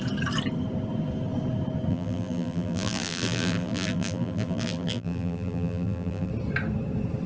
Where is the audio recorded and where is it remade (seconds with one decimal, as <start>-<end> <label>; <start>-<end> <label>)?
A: 0.0-1.9 recorded; 1.9-6.3 remade; 6.3-7.3 recorded